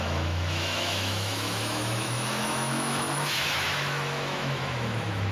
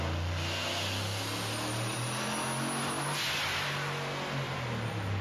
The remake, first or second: first